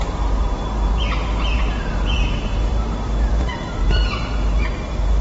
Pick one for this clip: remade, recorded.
remade